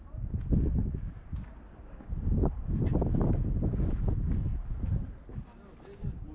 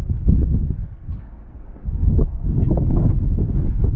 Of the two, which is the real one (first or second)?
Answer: first